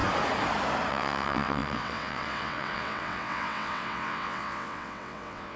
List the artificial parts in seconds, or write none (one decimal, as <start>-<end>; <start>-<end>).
0.9-5.6